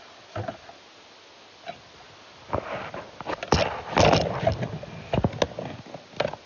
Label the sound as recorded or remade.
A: recorded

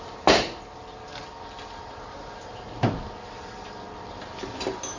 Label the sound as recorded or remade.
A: recorded